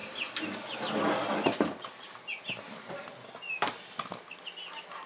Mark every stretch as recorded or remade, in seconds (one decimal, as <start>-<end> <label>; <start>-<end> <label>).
0.0-5.1 recorded